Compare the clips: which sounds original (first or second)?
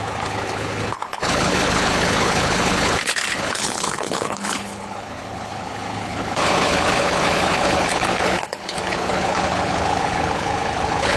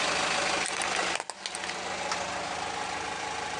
second